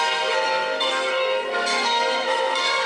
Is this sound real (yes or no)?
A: no